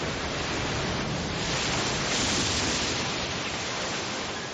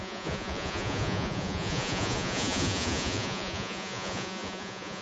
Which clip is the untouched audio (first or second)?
first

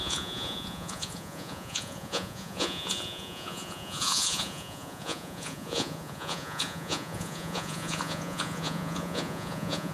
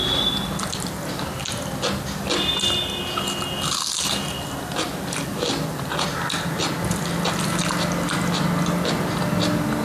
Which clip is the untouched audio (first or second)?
second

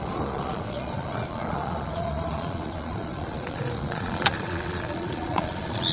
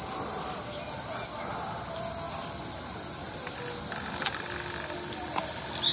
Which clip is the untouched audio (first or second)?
second